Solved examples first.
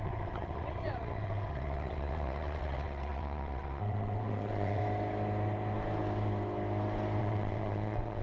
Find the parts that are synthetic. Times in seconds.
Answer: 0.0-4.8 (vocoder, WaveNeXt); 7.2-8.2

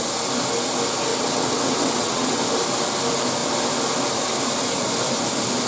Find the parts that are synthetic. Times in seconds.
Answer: 1.1-2.4 (vocoder, WaveNeXt)

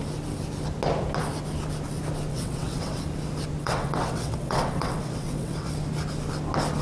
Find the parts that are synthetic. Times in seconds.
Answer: 2.3-3.0 (vocoder, WaveNeXt); 3.6-5.7

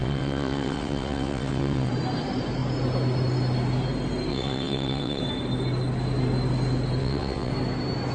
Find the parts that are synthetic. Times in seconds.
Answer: 0.0-1.9 (vocoder, WaveNeXt); 4.3-5.2; 7.0-7.5

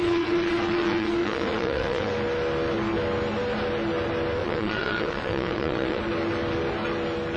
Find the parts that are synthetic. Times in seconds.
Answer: 0.0-2.1 (vocoder, WaveNeXt); 4.4-6.0